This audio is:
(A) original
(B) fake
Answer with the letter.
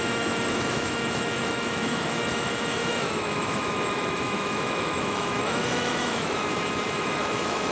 B